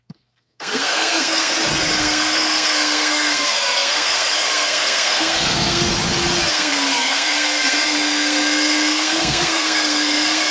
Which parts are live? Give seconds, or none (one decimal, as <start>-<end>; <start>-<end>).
1.5-2.0; 5.9-6.5